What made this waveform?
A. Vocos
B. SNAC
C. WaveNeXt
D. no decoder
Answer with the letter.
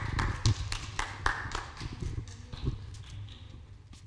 D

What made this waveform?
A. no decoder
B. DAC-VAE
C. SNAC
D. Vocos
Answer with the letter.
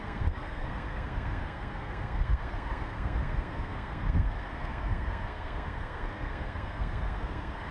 C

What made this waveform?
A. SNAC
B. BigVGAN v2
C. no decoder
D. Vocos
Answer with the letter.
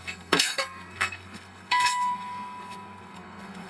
A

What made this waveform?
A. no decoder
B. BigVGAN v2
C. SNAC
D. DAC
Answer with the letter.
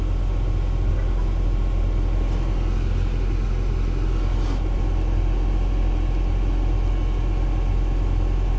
A